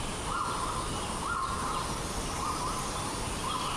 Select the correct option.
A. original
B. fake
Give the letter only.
A